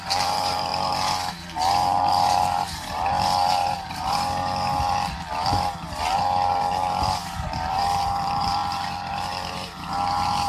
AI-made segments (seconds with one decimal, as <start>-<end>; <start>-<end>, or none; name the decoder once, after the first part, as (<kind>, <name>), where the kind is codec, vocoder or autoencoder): 0.0-10.5 (vocoder, BigVGAN v2)